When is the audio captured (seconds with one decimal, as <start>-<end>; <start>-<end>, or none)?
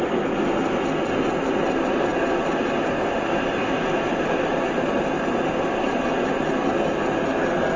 0.0-7.8